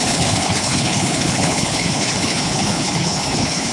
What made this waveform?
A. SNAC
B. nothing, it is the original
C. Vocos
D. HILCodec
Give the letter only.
D